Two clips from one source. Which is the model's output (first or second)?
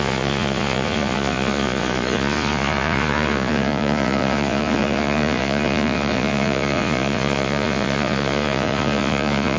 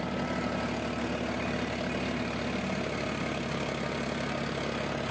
first